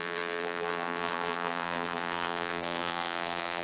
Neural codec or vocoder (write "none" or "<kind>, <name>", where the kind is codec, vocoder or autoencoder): vocoder, BigVGAN v2